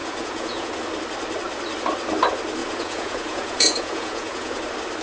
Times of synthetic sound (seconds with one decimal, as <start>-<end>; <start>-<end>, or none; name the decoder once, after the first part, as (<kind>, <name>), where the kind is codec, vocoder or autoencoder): 0.0-0.8 (vocoder, Vocos); 2.6-4.6